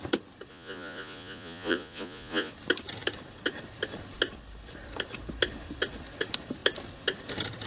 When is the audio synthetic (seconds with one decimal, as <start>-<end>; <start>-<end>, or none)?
0.5-2.5